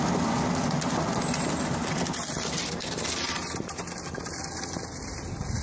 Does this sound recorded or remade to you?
recorded